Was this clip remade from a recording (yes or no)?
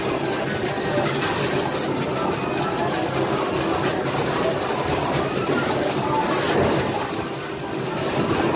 no